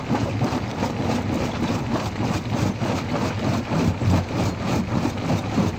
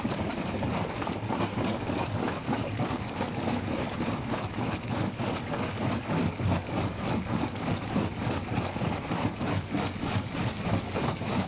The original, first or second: first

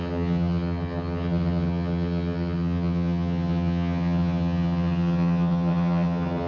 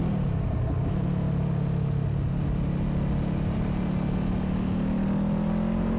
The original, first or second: second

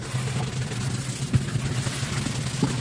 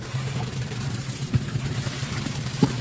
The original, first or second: first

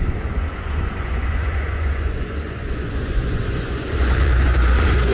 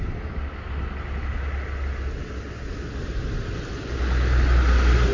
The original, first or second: second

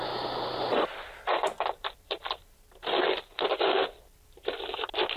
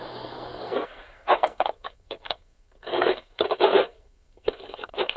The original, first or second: first